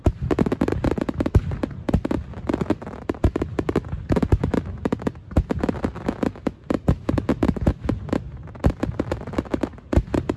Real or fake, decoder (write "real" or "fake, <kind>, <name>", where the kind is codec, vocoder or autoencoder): real